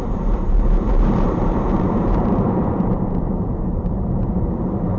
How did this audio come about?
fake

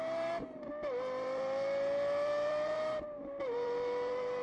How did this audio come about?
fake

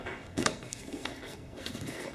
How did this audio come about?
fake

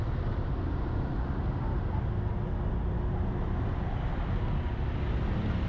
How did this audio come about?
real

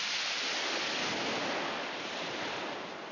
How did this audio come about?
real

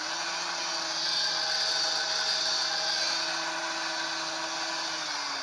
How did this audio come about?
real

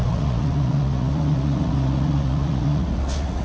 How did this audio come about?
fake